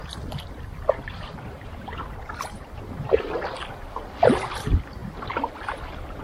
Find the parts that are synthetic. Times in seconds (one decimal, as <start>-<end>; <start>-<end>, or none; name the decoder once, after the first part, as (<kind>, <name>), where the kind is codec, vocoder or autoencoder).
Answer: 0.0-6.2 (vocoder, BigVGAN v2)